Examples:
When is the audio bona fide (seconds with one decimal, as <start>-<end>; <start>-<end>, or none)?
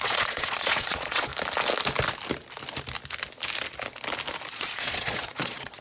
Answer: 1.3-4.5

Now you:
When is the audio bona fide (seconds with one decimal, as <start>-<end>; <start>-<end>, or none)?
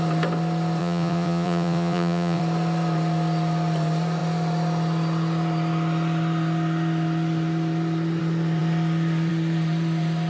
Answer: 0.0-0.8; 2.4-10.3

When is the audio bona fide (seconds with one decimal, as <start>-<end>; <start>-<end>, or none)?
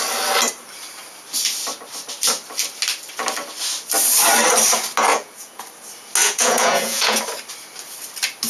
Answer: 0.0-5.1; 5.6-6.2; 7.2-8.5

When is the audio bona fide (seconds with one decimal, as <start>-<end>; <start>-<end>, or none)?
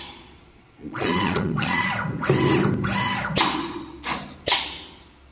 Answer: 1.9-5.3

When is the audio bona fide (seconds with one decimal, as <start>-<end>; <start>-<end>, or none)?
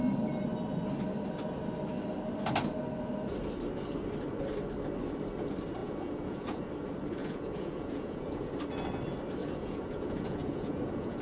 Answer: 0.0-5.8; 6.7-7.2; 8.5-9.4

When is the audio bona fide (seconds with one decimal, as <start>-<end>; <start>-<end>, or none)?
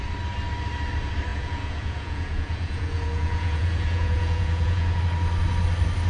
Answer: 0.0-1.3; 5.0-6.1